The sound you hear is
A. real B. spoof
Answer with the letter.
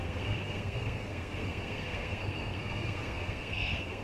B